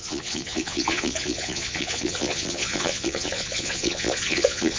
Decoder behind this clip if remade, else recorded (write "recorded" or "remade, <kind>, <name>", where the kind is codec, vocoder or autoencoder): remade, vocoder, Vocos